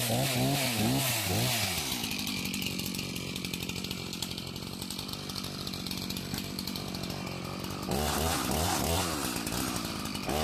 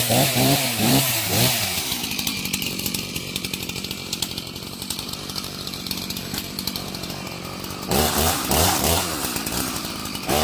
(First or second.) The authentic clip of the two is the first